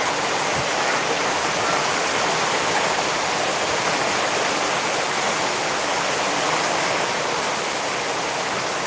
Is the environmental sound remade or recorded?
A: recorded